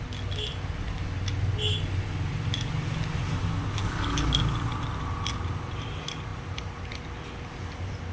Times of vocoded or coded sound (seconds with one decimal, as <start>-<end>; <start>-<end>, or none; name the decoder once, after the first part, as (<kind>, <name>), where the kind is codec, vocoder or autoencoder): 3.8-4.4 (codec, DAC)

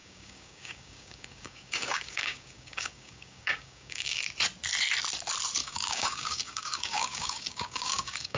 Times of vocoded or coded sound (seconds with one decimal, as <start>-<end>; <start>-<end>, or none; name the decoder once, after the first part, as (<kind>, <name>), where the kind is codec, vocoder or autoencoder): 0.0-4.2 (codec, DAC); 5.6-8.4

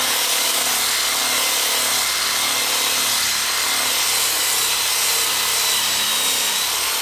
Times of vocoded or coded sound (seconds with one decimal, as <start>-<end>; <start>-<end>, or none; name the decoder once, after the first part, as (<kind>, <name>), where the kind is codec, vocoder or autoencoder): 0.0-0.7 (codec, DAC)

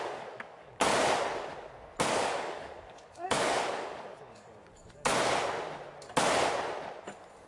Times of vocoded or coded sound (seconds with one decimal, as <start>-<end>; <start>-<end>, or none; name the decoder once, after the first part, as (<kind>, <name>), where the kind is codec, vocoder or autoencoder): 0.0-0.9 (codec, DAC); 2.1-5.1